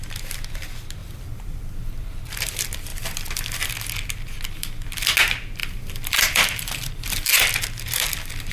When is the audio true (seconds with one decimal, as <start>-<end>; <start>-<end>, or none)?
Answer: 0.0-1.0; 2.2-5.6; 7.3-8.5

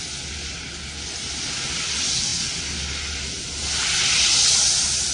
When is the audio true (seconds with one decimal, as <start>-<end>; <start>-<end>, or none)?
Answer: 0.0-5.1

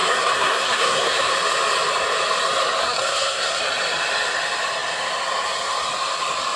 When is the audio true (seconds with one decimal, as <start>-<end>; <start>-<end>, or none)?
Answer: 1.3-2.8; 3.6-6.6

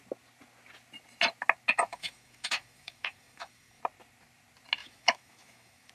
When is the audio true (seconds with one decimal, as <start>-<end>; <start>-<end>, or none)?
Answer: 0.0-1.9; 3.8-4.8

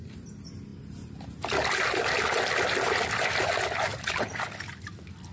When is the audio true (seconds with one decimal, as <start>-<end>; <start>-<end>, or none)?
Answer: 0.0-3.9; 4.5-5.3

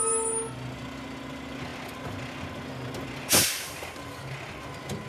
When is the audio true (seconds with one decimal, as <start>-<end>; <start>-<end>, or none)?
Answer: 0.0-5.1

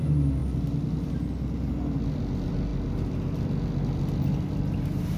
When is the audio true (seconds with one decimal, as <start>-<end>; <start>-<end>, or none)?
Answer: 0.0-5.2